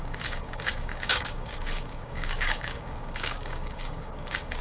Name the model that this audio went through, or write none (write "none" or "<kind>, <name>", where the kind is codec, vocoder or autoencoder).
codec, DAC